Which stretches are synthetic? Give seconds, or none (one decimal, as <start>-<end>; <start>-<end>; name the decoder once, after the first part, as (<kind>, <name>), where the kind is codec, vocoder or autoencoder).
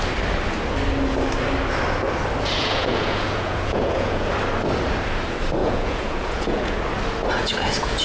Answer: 2.6-4.3 (vocoder, Vocos); 5.6-6.8; 7.4-8.0